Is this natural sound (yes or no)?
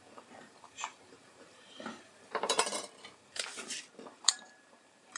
no